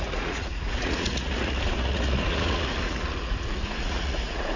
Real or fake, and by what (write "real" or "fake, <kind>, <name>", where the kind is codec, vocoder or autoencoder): fake, vocoder, Vocos